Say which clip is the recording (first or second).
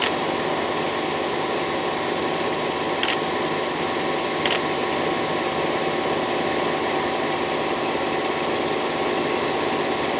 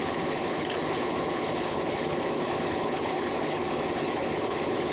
first